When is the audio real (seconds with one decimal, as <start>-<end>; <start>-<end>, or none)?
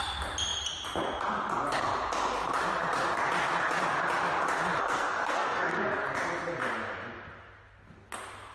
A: 0.0-4.8; 5.8-8.5